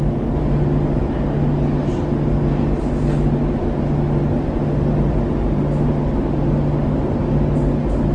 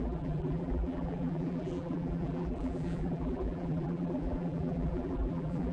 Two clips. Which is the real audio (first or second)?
first